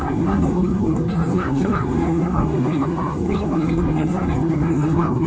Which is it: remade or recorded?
remade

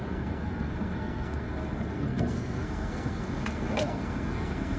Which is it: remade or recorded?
remade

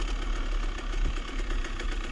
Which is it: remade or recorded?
recorded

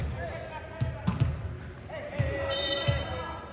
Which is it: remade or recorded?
recorded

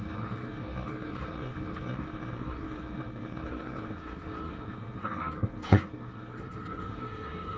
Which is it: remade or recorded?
remade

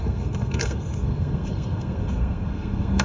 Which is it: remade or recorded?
remade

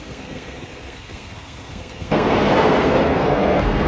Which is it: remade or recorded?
remade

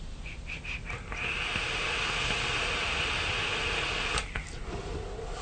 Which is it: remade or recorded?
recorded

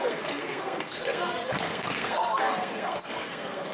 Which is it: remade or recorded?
remade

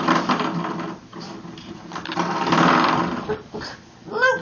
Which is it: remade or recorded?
recorded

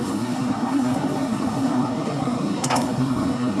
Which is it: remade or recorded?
remade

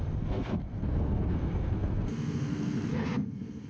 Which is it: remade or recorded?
remade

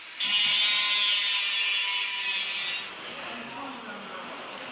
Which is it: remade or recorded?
recorded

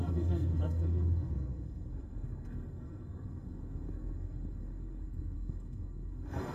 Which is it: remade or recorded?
remade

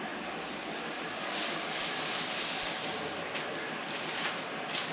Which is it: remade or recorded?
recorded